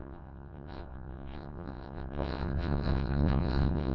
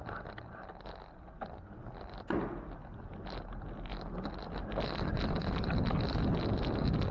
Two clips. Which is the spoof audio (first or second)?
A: first